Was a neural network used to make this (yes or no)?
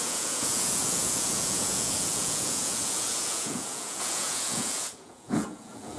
yes